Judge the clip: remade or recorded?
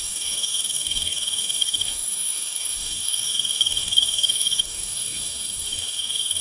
remade